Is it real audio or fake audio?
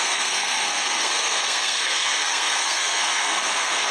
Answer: fake